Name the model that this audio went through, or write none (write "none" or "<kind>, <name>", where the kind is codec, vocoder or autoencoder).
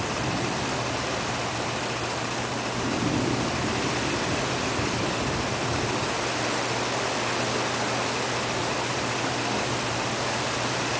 none